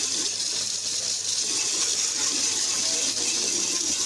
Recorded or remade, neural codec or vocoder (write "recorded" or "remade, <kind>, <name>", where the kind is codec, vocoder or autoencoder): remade, vocoder, BigVGAN v2